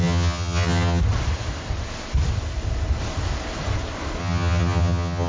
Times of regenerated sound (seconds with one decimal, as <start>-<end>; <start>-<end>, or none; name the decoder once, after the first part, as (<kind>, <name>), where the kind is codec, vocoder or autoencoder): 0.0-1.0 (vocoder, HiFi-GAN); 4.2-5.3